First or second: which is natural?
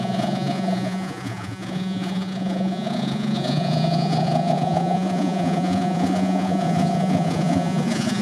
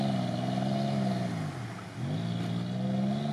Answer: second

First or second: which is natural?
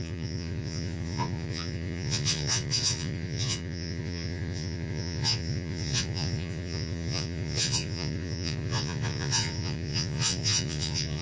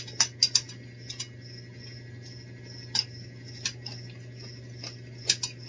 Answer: second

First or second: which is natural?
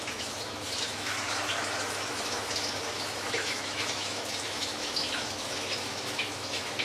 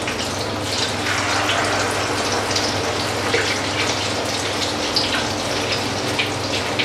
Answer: second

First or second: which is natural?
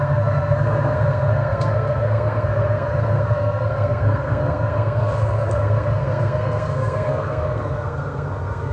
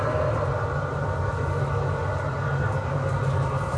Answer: second